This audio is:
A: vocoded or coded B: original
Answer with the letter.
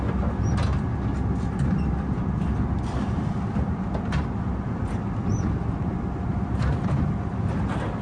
B